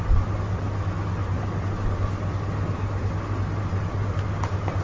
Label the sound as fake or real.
real